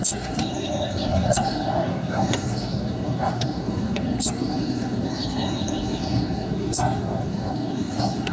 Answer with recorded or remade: remade